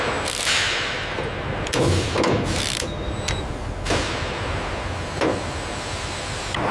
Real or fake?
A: real